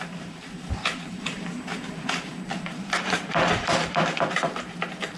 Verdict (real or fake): fake